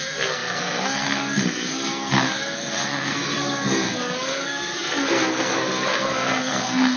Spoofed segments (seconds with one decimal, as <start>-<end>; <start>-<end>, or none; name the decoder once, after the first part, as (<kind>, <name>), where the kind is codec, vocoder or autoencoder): 0.0-7.0 (codec, SNAC)